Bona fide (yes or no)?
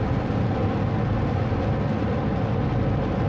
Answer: yes